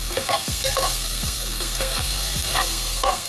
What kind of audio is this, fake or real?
fake